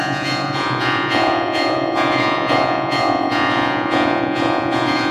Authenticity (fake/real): fake